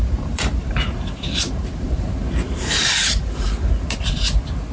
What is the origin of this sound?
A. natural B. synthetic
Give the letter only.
B